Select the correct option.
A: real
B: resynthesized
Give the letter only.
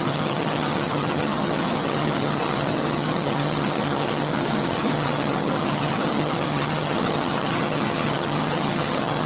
B